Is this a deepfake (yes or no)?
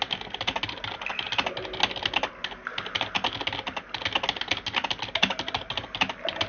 no